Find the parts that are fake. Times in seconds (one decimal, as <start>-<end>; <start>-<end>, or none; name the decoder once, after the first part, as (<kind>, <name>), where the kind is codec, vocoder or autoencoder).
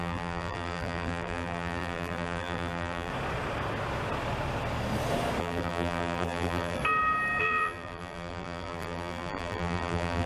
0.0-3.1 (vocoder, BigVGAN v2); 5.4-6.8; 7.4-10.3